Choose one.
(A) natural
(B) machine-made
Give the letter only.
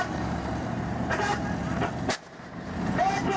B